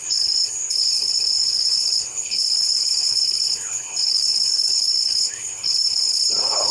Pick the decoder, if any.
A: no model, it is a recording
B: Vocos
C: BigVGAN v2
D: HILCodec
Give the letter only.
D